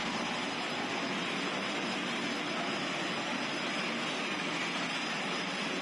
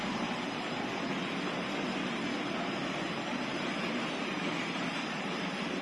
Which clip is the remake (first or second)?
second